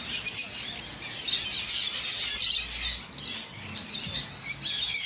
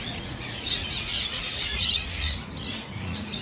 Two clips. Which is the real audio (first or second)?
first